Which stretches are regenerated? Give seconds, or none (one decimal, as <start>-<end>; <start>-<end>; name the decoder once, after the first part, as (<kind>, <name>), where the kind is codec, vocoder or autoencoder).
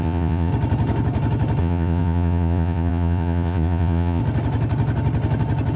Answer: 0.0-0.5 (vocoder, Vocos); 1.6-4.2